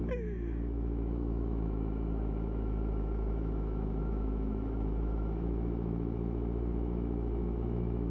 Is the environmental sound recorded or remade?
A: remade